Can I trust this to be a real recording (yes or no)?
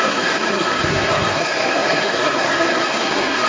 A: no